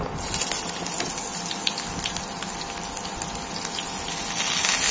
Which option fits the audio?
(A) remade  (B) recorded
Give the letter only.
B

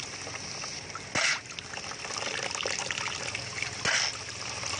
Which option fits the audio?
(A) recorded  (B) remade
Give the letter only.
A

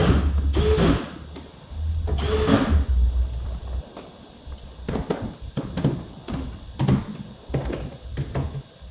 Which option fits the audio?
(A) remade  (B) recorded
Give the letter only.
B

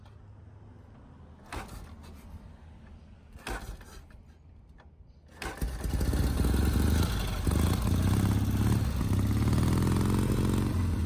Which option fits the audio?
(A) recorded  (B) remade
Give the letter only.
A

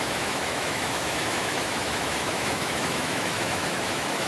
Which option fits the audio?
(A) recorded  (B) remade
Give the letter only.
B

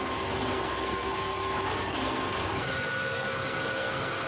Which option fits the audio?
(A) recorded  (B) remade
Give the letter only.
B